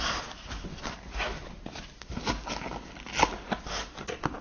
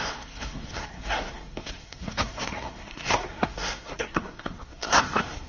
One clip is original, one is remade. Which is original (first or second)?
first